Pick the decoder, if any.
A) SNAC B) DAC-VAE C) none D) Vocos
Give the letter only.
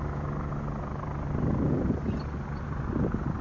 C